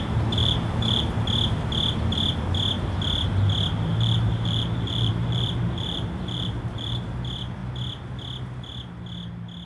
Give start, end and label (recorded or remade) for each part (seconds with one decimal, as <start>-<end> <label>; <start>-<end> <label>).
0.0-0.4 recorded; 0.4-1.1 remade; 1.1-3.9 recorded; 3.9-7.1 remade; 7.1-9.7 recorded